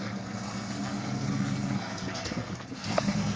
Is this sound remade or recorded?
remade